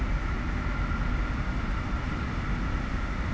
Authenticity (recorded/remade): recorded